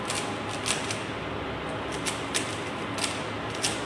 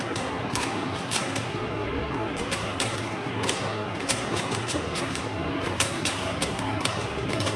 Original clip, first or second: first